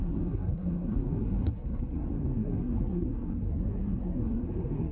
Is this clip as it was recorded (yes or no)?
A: no